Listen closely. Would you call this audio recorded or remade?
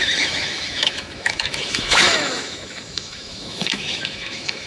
remade